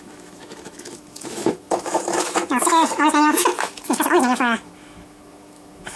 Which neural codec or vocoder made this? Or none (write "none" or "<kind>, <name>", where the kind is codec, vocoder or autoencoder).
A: autoencoder, DAC-VAE